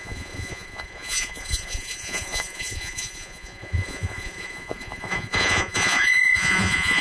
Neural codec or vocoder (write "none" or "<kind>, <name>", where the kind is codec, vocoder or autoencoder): vocoder, Vocos